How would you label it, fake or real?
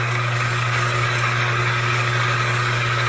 fake